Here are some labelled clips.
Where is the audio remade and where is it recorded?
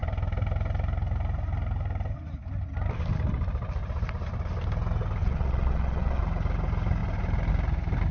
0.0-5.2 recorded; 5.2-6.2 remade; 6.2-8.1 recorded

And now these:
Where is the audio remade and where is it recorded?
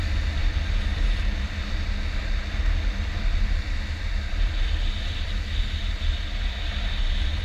0.0-7.4 recorded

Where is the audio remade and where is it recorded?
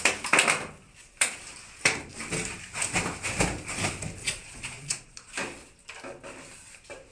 0.0-4.2 recorded; 4.2-5.3 remade; 5.3-7.1 recorded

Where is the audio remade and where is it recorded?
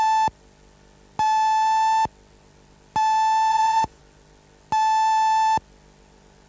0.0-3.5 recorded; 3.5-4.0 remade; 4.0-6.5 recorded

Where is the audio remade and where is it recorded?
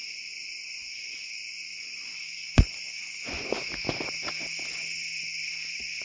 0.0-3.6 remade; 3.6-6.0 recorded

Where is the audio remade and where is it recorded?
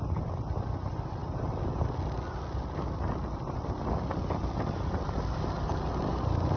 0.0-6.6 recorded